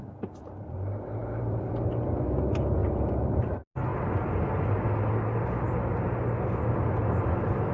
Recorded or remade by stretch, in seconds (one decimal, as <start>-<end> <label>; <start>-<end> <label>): 0.0-1.2 recorded; 1.2-1.7 remade; 1.7-2.8 recorded; 2.8-3.5 remade; 3.5-7.7 recorded